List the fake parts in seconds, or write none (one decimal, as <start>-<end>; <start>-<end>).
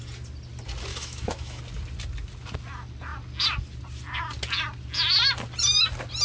0.9-1.6